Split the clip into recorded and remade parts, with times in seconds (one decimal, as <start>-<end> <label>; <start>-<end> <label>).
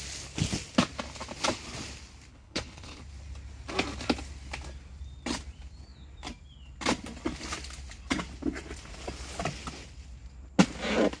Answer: 0.0-2.3 recorded; 2.3-3.0 remade; 3.0-11.2 recorded